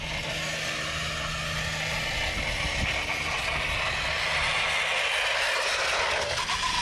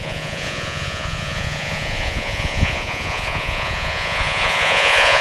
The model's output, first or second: second